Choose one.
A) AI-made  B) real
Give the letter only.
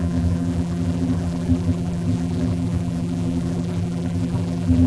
A